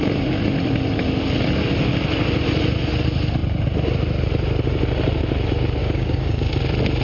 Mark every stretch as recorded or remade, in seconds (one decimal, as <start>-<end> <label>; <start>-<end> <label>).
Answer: 0.0-5.8 recorded; 5.8-6.5 remade; 6.5-7.0 recorded